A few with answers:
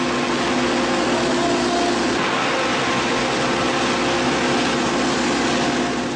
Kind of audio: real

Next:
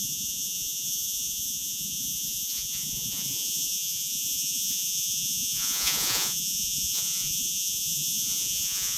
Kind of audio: fake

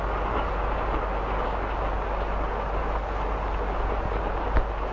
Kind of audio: real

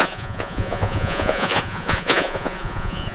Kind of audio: fake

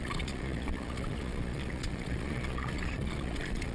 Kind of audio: fake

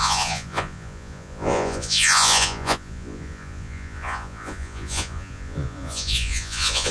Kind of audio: fake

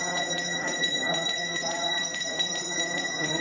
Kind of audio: fake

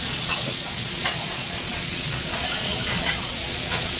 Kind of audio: fake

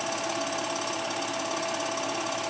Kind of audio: real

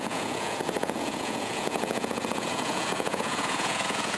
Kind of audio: fake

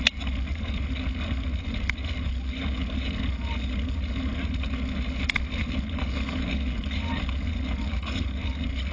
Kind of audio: real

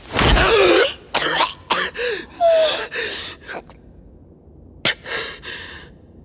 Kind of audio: real